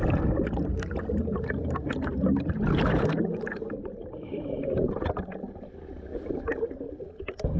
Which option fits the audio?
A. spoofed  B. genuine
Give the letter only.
B